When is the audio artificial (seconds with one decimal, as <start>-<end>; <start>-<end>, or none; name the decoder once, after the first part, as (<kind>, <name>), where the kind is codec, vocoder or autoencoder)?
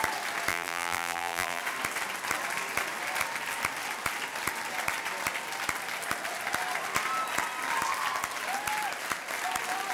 0.5-1.6 (vocoder, BigVGAN v2)